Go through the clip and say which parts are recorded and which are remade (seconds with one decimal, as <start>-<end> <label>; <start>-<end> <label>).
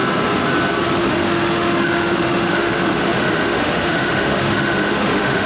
0.0-1.0 recorded; 1.0-5.5 remade